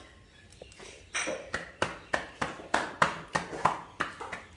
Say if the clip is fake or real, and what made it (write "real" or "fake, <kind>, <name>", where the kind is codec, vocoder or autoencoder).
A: real